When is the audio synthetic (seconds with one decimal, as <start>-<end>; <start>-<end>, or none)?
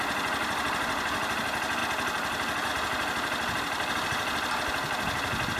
0.4-1.4